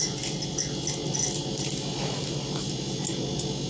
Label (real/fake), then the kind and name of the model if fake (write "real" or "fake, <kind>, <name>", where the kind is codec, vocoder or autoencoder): real